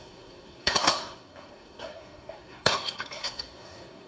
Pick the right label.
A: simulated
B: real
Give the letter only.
A